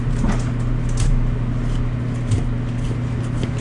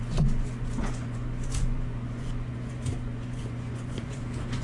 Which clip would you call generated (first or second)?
second